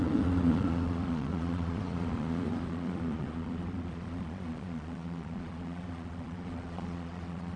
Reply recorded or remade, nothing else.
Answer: remade